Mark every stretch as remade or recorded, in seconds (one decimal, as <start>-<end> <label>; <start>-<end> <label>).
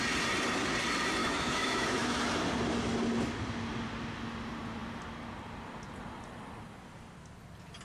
0.0-1.2 recorded; 1.2-2.2 remade; 2.2-7.8 recorded